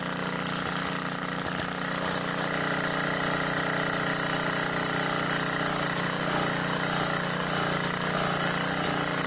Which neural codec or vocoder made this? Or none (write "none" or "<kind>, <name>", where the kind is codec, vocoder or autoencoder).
none